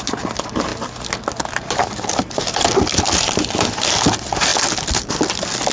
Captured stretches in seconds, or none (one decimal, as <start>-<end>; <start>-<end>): 0.7-1.6